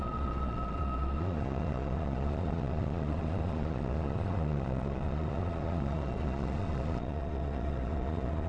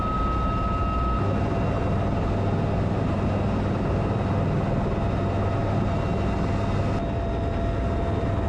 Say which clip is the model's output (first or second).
first